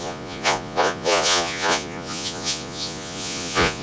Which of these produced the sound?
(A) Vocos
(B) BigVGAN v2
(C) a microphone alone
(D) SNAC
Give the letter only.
A